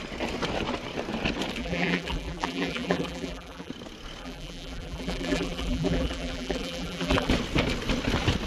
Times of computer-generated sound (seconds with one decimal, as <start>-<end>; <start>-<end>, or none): 1.6-3.7; 4.2-7.3